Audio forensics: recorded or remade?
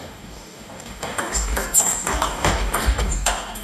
remade